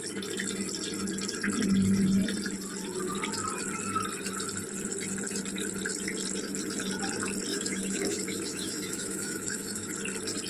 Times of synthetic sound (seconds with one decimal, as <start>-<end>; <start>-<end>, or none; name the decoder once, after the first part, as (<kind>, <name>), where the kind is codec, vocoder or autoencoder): 7.5-9.9 (autoencoder, DAC-VAE)